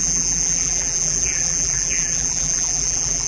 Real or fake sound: fake